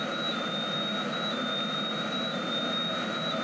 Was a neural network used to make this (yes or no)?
no